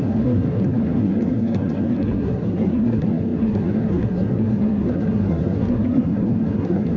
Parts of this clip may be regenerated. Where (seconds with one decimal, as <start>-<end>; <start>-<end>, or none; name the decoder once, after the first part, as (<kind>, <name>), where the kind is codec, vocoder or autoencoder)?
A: 0.0-7.0 (codec, SNAC)